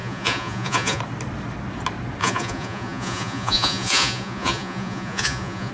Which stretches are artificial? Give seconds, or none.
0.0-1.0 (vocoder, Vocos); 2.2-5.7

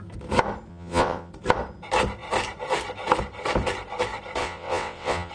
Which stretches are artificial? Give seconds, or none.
0.7-1.3 (vocoder, WaveNeXt); 4.4-5.3

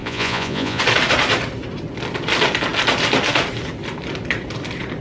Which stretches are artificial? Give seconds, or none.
0.0-0.8 (vocoder, Vocos)

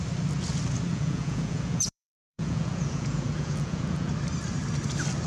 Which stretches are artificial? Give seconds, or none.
0.9-4.1 (vocoder, Vocos)

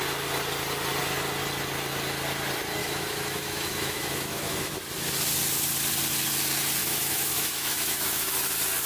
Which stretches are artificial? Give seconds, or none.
2.8-4.7 (autoencoder, DAC-VAE); 6.8-8.3